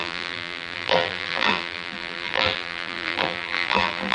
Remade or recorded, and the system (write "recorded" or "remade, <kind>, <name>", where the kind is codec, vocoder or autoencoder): remade, vocoder, BigVGAN v2